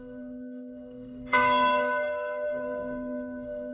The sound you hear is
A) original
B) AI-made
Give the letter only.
B